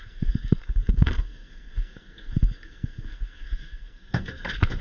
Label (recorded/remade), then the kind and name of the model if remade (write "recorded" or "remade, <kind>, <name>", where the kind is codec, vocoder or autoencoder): remade, codec, SNAC